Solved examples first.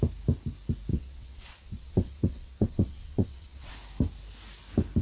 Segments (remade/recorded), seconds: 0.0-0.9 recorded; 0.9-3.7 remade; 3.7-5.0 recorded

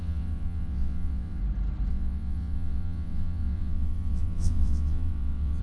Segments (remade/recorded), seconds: 0.0-1.4 remade; 1.4-1.9 recorded; 1.9-5.6 remade

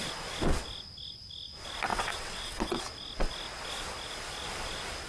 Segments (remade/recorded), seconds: 0.0-1.9 recorded; 1.9-2.8 remade; 2.8-5.1 recorded